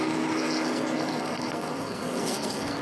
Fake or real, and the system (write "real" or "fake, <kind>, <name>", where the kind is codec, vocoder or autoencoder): fake, codec, SNAC